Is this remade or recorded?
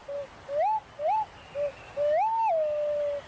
recorded